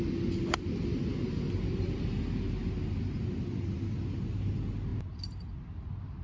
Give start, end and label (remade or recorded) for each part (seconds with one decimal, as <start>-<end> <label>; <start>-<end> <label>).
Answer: 0.0-6.2 recorded